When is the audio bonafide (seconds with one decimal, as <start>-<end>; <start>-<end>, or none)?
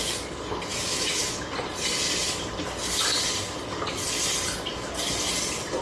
0.0-0.7; 1.5-5.8